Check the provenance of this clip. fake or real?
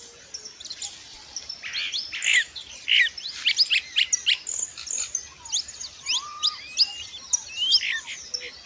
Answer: real